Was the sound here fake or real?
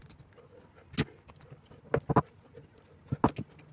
real